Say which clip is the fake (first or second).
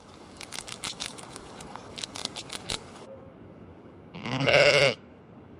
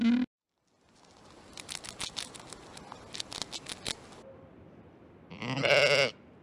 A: first